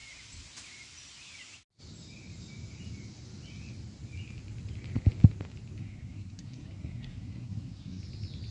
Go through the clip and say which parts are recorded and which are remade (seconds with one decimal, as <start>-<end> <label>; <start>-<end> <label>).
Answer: 0.0-5.8 recorded; 5.8-8.0 remade; 8.0-8.5 recorded